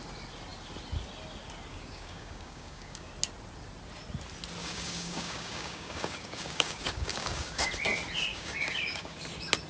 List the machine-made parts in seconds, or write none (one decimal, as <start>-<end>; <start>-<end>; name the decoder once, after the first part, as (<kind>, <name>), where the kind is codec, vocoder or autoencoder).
1.7-3.1 (codec, DAC); 4.6-7.7; 8.3-9.2